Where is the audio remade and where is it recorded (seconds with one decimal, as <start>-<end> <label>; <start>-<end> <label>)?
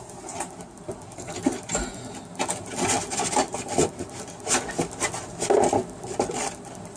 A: 0.0-7.0 recorded